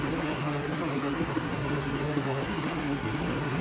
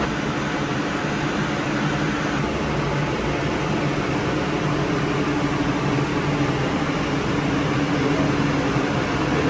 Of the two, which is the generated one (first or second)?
first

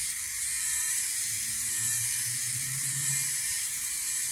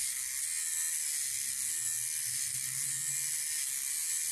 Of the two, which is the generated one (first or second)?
first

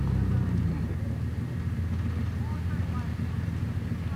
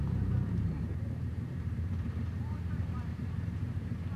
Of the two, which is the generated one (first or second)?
second